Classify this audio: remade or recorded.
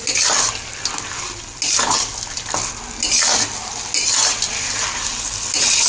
recorded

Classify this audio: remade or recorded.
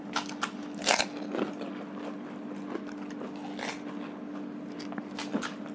recorded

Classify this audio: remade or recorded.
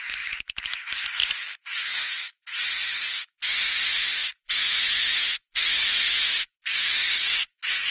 remade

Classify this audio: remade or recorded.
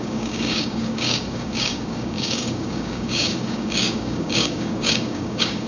remade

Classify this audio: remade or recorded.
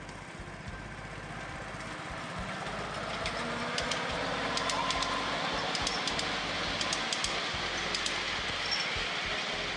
recorded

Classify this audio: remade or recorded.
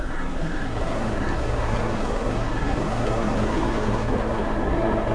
remade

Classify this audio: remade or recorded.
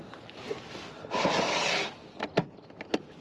recorded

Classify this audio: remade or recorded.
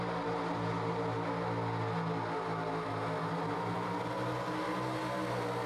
recorded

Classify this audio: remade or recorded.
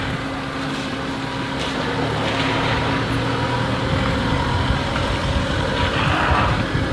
recorded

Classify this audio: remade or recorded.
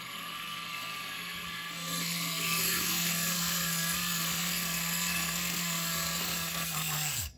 remade